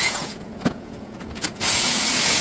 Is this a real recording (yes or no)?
no